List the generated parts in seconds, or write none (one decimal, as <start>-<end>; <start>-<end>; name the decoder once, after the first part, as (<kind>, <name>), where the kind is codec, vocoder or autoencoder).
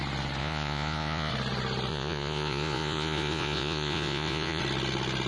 0.4-1.3 (vocoder, Vocos); 1.9-4.6